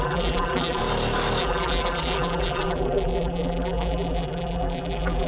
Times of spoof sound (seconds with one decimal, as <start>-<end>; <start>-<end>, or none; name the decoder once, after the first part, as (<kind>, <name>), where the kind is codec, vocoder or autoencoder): 0.0-0.8 (vocoder, BigVGAN v2); 1.4-5.3